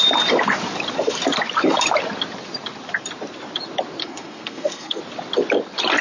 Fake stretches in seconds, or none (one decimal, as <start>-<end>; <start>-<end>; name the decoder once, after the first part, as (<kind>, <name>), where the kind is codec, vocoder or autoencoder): 4.0-5.0 (codec, SNAC)